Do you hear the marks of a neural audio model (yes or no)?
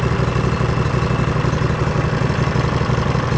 no